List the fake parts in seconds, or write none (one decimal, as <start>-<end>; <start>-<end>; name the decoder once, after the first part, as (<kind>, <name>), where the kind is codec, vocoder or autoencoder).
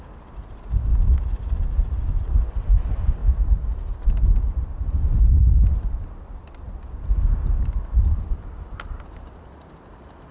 0.0-0.9 (vocoder, BigVGAN v2); 2.5-3.2; 7.9-10.3